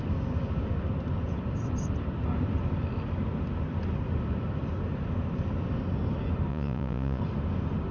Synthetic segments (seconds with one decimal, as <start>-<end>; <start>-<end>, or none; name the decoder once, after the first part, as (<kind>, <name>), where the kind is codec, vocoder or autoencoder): 6.5-7.2 (vocoder, Vocos)